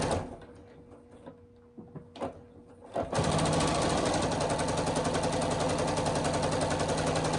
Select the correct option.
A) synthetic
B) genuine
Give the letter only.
B